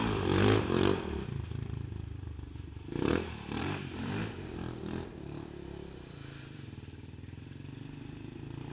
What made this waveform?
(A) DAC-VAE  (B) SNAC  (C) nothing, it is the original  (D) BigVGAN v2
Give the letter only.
D